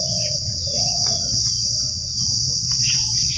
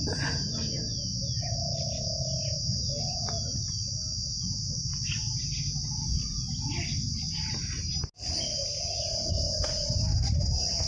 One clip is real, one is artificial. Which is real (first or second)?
second